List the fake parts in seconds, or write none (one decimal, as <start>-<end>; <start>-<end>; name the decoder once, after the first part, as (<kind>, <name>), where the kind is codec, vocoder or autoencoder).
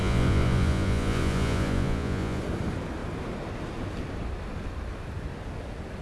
0.0-2.4 (vocoder, Vocos)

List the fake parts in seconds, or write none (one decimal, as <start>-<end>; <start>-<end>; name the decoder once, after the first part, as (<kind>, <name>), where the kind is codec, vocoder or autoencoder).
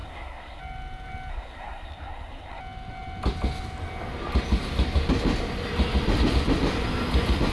0.0-0.6 (codec, SNAC); 1.3-2.6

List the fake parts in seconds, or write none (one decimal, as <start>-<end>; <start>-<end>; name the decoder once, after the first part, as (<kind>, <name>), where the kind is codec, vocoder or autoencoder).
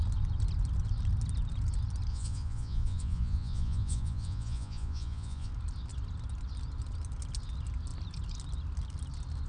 2.1-5.5 (vocoder, Vocos)